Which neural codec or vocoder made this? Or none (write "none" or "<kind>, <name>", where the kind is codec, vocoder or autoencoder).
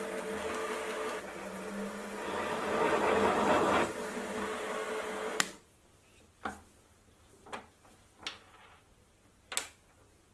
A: none